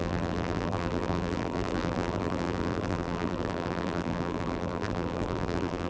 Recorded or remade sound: remade